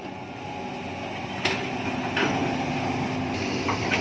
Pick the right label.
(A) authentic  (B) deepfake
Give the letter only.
A